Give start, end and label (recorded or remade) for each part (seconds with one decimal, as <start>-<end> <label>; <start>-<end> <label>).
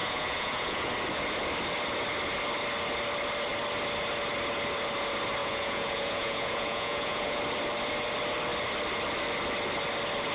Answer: 0.0-0.9 remade; 0.9-5.4 recorded; 5.4-7.4 remade; 7.4-10.3 recorded